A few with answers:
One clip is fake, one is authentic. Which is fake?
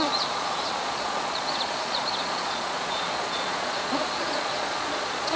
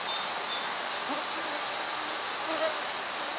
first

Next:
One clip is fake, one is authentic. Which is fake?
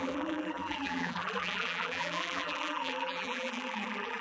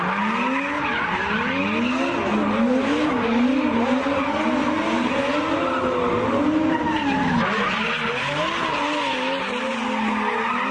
first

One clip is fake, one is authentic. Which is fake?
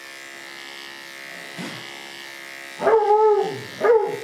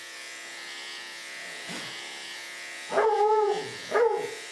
second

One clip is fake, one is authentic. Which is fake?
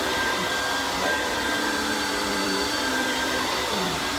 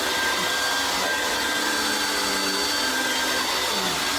first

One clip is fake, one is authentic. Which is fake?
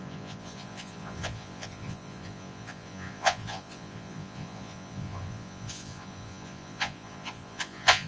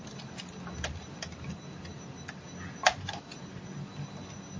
first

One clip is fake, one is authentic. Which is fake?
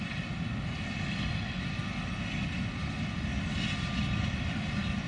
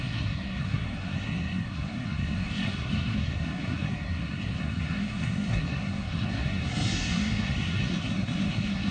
second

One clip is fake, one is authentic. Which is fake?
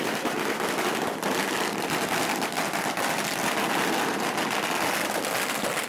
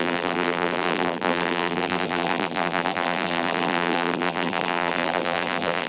second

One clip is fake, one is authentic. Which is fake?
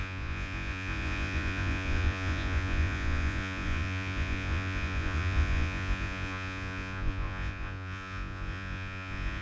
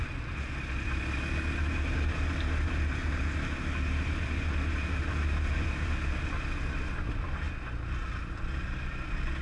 first